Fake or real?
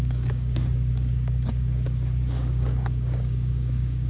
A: fake